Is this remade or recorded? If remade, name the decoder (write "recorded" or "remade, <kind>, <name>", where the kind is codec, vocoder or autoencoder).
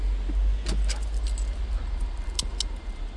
recorded